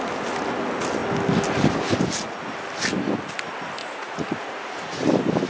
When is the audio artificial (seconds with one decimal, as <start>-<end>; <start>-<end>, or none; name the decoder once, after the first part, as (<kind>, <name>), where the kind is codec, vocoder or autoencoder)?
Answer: 3.8-5.0 (vocoder, Vocos)